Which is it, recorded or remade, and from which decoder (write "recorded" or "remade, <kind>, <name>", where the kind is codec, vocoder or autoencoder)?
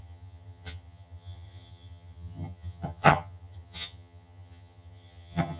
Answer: remade, vocoder, HiFi-GAN